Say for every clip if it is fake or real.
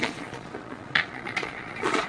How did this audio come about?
fake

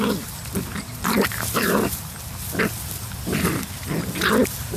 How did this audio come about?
real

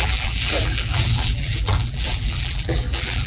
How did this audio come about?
fake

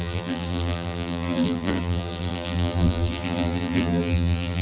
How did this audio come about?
fake